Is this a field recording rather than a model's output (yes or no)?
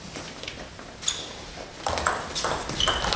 yes